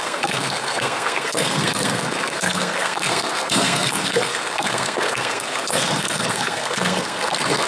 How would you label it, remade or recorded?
remade